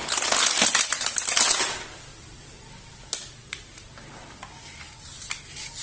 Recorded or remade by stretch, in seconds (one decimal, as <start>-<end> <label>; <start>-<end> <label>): 0.0-5.8 recorded